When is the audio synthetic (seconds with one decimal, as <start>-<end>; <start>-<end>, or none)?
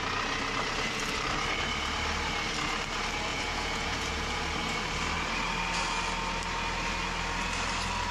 3.3-4.4